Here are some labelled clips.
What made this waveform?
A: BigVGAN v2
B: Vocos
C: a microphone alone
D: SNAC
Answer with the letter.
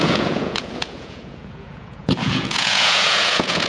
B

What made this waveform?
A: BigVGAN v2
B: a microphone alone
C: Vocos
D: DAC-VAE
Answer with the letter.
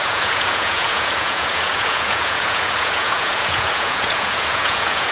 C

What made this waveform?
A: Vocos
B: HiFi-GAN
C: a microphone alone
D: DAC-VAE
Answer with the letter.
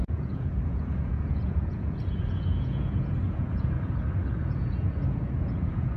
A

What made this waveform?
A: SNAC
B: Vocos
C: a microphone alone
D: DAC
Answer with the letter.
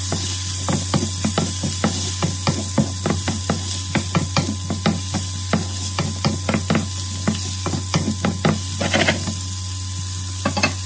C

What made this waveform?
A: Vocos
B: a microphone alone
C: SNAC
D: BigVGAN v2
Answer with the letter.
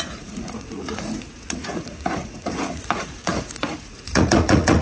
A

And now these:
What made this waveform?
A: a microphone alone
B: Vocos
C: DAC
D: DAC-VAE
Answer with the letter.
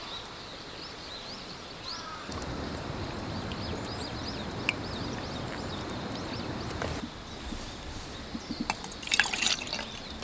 A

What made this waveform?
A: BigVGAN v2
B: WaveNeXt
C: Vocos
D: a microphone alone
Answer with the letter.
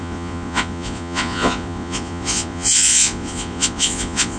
C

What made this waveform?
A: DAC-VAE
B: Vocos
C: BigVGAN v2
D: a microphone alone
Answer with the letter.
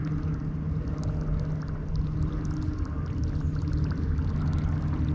D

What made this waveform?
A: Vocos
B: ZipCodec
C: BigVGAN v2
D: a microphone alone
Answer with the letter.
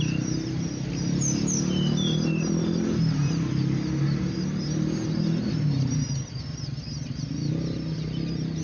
D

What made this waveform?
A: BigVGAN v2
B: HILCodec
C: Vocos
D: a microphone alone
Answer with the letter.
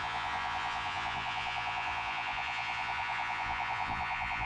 C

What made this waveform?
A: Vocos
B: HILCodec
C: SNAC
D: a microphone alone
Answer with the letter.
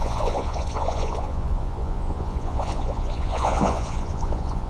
A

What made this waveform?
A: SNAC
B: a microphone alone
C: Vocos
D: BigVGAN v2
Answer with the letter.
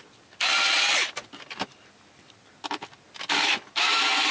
B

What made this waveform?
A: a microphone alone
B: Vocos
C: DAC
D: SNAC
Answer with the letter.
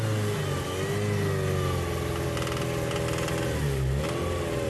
A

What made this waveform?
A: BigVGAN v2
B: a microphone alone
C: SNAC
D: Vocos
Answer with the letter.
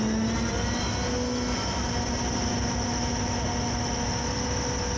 B